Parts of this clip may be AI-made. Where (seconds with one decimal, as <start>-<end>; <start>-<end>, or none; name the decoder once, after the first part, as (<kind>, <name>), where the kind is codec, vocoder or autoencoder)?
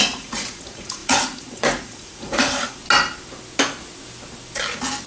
0.0-2.8 (vocoder, Vocos)